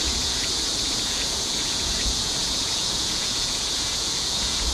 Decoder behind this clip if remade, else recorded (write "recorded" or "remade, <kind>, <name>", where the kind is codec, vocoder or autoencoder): remade, vocoder, Vocos